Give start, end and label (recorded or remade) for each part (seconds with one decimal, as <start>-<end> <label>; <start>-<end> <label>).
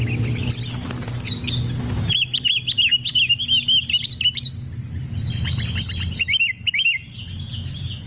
0.0-8.1 recorded